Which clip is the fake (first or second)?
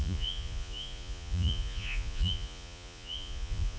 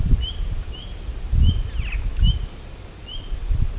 first